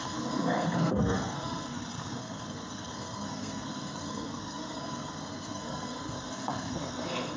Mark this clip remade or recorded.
remade